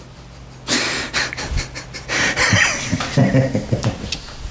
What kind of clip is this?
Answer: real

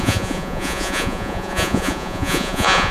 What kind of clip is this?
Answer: fake